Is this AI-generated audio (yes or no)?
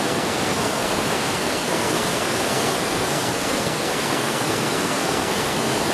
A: yes